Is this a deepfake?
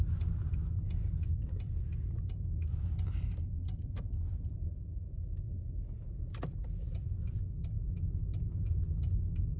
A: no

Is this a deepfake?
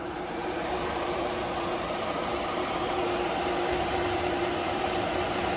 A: yes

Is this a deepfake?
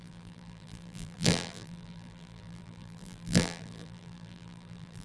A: yes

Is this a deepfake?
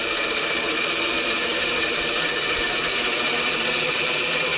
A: yes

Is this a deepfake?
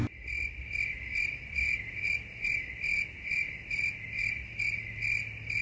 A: no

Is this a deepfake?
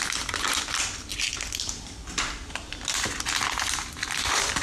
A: no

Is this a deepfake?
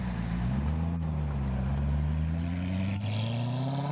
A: no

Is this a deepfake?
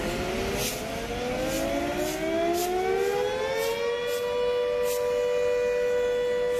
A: no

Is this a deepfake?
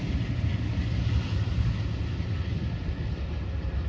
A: no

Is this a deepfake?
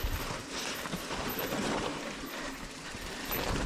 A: yes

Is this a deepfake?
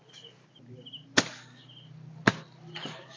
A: no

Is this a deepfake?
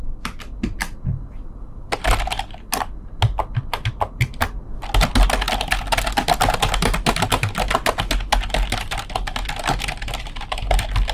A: no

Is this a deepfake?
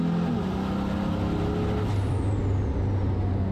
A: no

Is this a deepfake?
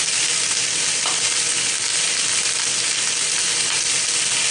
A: no